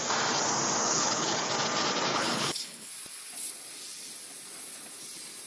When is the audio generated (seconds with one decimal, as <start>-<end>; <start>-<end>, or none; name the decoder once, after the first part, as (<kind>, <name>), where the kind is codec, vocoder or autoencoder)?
0.8-1.5 (codec, HILCodec); 2.1-2.9